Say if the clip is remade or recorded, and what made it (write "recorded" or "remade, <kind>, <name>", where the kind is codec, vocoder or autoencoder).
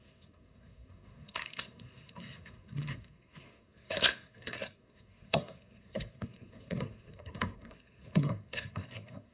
remade, codec, SNAC